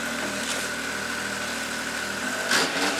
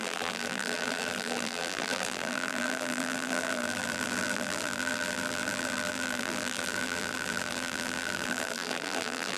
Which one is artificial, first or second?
second